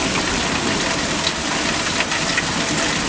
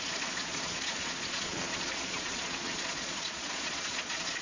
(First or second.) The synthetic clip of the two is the second